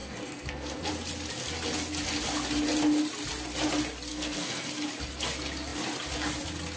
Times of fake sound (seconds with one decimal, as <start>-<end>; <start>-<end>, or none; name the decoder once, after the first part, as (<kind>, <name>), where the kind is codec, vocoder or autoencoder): 0.0-0.9 (codec, SNAC); 4.1-4.7